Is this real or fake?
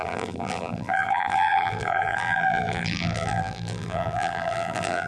fake